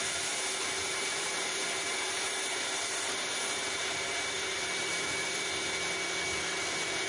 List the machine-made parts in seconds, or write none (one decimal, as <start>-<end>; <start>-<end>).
0.8-5.1